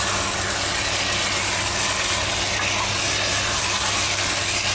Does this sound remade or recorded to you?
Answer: recorded